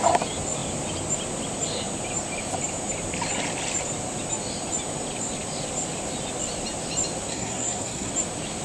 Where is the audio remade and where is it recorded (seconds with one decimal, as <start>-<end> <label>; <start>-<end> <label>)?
0.0-7.3 recorded; 7.3-8.1 remade; 8.1-8.6 recorded